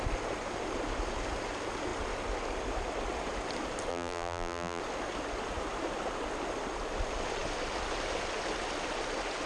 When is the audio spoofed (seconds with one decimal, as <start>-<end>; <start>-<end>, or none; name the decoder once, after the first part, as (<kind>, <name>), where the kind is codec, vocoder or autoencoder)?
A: 3.9-4.8 (vocoder, BigVGAN v2)